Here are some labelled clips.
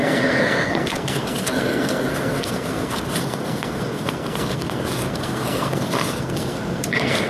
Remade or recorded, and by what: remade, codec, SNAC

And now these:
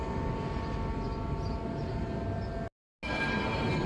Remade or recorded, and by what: recorded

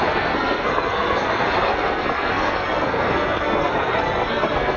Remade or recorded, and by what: remade, codec, SNAC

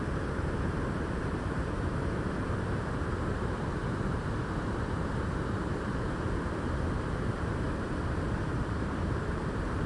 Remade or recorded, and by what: remade, vocoder, BigVGAN v2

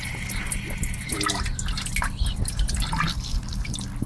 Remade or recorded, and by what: recorded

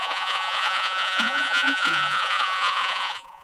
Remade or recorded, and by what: remade, vocoder, Vocos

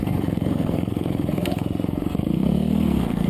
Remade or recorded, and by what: remade, codec, SNAC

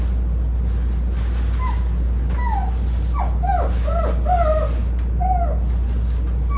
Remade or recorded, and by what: recorded